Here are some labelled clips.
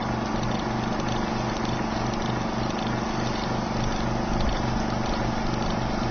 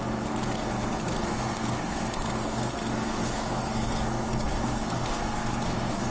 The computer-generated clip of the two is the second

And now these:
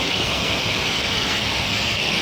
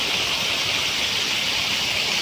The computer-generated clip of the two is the first